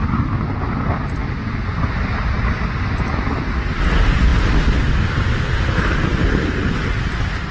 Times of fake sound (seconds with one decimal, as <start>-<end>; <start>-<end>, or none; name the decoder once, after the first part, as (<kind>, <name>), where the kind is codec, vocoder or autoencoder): 0.0-1.2 (vocoder, BigVGAN v2); 3.3-4.3; 4.9-6.1